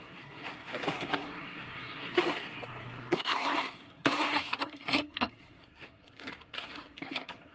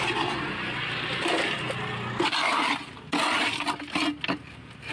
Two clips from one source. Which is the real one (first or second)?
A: second